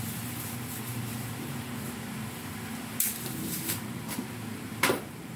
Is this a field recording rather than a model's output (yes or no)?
no